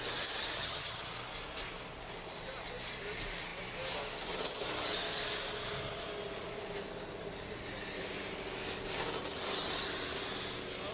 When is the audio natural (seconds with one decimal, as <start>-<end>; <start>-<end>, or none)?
0.0-0.6; 1.1-10.9